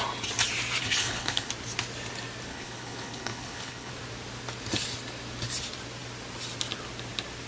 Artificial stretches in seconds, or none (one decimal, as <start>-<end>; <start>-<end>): 0.8-1.5; 2.5-3.9